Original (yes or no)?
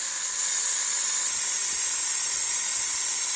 yes